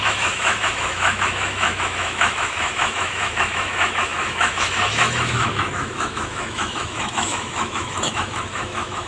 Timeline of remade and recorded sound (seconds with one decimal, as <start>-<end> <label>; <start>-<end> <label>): 0.0-9.1 remade